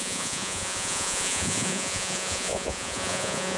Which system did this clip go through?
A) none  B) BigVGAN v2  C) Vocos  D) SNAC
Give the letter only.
C